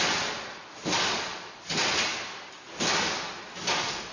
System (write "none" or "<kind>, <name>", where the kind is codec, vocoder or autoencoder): none